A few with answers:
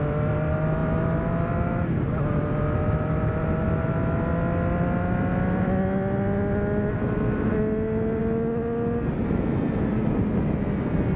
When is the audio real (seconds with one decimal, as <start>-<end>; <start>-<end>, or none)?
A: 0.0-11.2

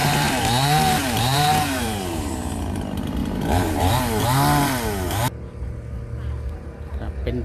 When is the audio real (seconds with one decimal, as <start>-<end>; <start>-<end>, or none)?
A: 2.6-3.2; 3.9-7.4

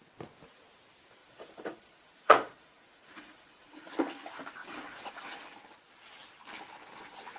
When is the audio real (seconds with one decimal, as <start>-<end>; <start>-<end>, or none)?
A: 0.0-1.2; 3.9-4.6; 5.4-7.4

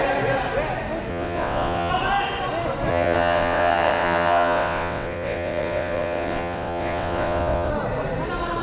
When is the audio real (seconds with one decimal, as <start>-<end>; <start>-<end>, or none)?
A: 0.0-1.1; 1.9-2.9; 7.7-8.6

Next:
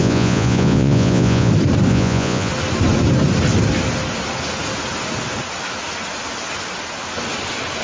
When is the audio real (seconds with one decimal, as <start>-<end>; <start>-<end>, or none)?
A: 1.5-1.9; 2.5-7.8

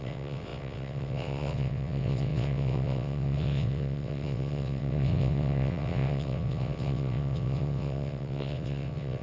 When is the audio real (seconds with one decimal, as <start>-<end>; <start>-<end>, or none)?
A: none

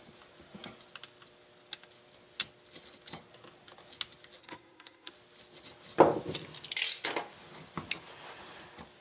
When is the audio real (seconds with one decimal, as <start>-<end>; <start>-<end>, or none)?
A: 0.0-4.4; 5.1-9.0